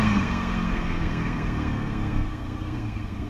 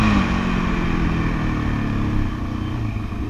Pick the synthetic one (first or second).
first